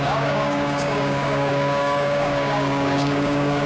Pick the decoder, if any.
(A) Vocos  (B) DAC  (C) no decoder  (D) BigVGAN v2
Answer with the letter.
B